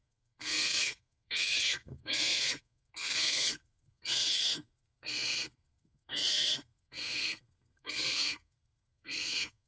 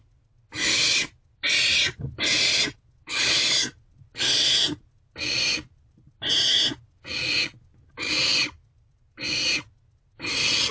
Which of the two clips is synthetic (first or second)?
first